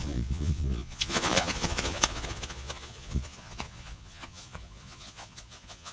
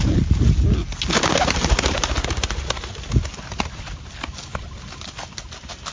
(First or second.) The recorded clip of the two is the second